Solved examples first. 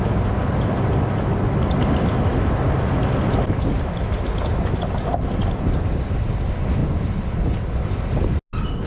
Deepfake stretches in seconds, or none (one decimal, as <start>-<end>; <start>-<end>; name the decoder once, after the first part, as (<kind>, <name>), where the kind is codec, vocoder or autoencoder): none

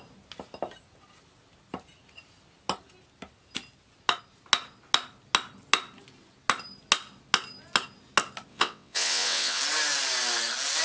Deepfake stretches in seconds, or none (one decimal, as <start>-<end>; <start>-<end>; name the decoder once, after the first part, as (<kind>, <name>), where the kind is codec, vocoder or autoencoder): 8.5-9.6 (vocoder, WaveNeXt)

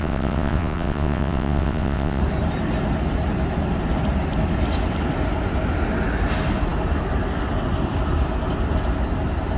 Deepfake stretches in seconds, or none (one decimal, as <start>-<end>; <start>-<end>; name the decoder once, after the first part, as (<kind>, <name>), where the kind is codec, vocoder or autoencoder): 0.0-2.2 (vocoder, WaveNeXt)